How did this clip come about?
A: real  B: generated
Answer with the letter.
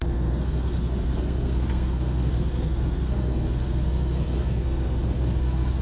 B